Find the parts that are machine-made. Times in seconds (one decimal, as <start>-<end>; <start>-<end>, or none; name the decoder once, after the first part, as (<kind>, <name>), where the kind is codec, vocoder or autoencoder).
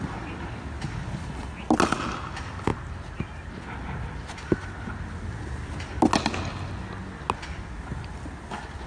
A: none